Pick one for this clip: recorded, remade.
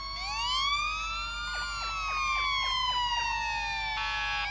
recorded